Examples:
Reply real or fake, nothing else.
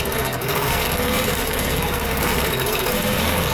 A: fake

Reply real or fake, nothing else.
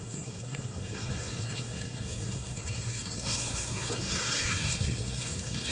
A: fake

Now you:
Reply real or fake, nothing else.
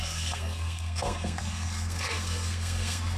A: fake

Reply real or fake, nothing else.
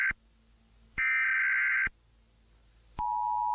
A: real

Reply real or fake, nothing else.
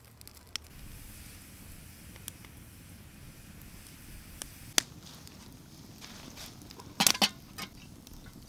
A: real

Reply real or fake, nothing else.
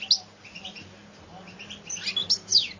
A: real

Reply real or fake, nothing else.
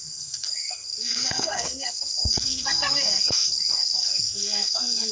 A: fake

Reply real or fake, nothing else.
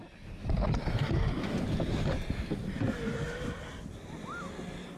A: real